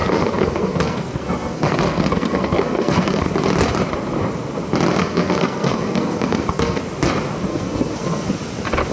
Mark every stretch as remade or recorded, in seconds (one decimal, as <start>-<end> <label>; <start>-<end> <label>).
0.0-3.3 remade; 3.3-4.9 recorded; 4.9-6.8 remade; 6.8-7.5 recorded; 7.5-8.3 remade; 8.3-8.9 recorded